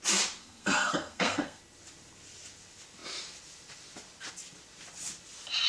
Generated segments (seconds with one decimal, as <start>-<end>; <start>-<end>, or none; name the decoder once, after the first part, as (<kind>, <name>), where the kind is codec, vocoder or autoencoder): 0.4-1.6 (codec, SNAC)